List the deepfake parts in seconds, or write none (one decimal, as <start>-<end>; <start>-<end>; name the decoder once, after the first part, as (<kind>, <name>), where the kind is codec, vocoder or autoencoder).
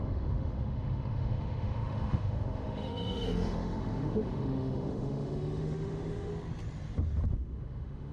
0.0-6.3 (autoencoder, DAC-VAE); 7.3-8.1